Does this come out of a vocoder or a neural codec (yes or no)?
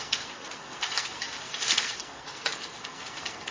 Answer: yes